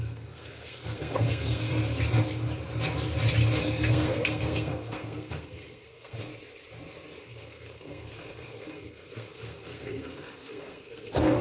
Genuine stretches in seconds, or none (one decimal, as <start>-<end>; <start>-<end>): 1.7-3.6; 6.3-7.2